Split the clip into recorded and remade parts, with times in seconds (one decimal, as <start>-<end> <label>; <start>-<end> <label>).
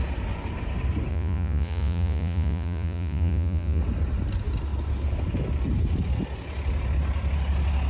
0.0-1.1 recorded; 1.1-3.8 remade; 3.8-7.9 recorded